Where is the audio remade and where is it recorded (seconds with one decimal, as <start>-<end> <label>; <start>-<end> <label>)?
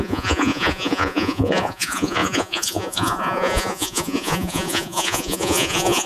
0.0-6.1 remade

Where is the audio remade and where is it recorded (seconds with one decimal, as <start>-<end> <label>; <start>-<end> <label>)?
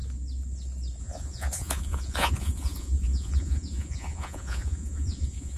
0.0-1.0 recorded; 1.0-5.6 remade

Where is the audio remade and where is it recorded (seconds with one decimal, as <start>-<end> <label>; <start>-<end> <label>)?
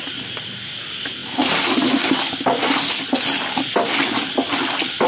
0.0-5.1 recorded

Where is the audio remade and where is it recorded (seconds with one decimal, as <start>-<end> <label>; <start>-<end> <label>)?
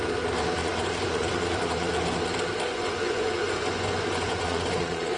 0.0-0.6 recorded; 0.6-1.9 remade; 1.9-2.7 recorded; 2.7-5.2 remade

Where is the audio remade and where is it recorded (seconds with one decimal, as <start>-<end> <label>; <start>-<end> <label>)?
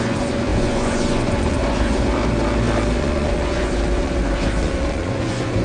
0.0-2.2 remade; 2.2-3.0 recorded; 3.0-5.6 remade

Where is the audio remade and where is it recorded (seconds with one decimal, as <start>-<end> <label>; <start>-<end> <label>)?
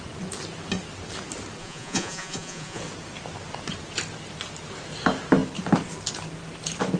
0.0-1.6 recorded; 1.6-2.8 remade; 2.8-7.0 recorded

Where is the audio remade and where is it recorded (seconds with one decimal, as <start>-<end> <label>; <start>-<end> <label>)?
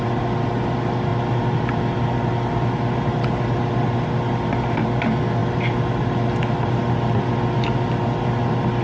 0.0-8.8 recorded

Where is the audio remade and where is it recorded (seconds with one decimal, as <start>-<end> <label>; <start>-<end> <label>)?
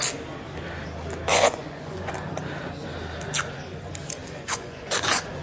0.0-1.3 recorded; 1.3-2.1 remade; 2.1-4.2 recorded; 4.2-5.4 remade